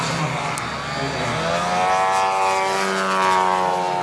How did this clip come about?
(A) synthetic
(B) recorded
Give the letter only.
B